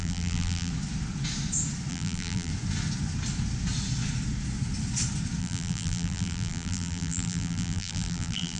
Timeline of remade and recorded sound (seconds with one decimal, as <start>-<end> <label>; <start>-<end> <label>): 0.0-0.7 remade; 0.7-1.9 recorded; 1.9-2.5 remade; 2.5-5.4 recorded; 5.4-8.6 remade